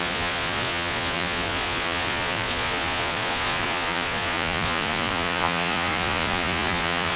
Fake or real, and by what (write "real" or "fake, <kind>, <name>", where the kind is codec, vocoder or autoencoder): fake, vocoder, Vocos